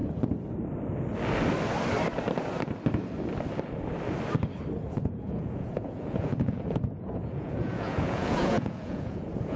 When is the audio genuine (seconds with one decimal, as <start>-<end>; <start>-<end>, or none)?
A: 0.0-4.9